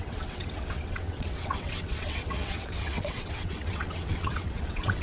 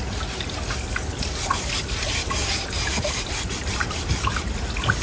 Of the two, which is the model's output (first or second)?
first